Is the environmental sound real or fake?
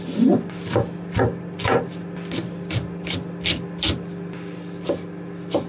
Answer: real